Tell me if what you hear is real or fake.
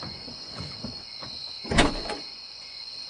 fake